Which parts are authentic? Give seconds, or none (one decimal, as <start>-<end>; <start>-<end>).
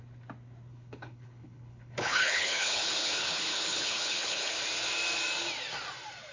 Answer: 0.0-0.7; 4.5-6.3